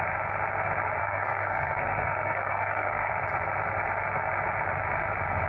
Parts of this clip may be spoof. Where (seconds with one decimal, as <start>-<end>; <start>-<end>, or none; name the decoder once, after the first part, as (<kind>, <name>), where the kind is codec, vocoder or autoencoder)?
1.0-3.1 (codec, SNAC)